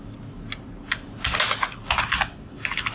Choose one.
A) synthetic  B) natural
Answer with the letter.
B